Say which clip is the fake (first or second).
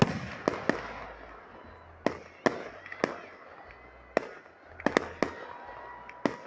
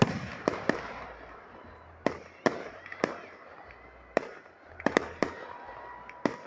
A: second